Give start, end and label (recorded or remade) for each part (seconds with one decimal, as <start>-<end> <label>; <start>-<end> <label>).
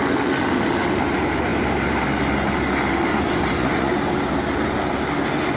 0.0-3.1 recorded; 3.1-3.9 remade; 3.9-5.6 recorded